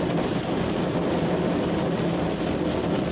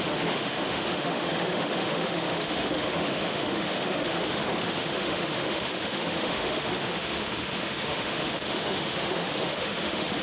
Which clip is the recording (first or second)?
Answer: first